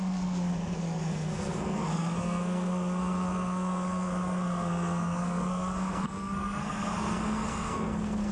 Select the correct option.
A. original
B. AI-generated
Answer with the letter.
B